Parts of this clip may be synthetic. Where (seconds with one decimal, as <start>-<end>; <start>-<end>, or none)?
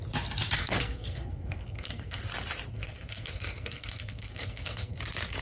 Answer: 0.6-2.2; 2.7-5.0